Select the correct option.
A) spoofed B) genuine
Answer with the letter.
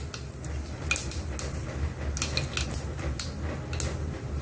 B